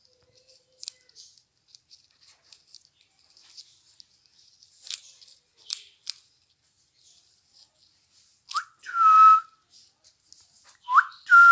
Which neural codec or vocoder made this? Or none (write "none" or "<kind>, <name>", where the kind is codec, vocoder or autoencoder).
none